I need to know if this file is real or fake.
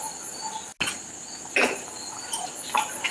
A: real